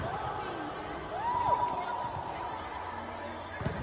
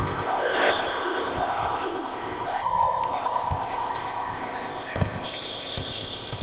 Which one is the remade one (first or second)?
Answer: second